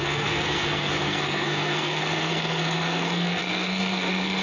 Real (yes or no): no